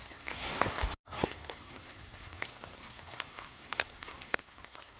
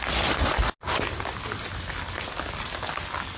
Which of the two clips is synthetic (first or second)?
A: first